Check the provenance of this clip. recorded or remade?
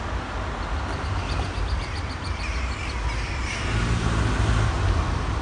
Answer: recorded